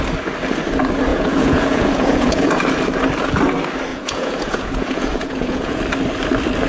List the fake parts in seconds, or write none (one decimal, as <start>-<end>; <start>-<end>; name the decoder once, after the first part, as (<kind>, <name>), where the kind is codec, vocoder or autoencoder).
1.1-2.5 (vocoder, Vocos); 3.9-5.8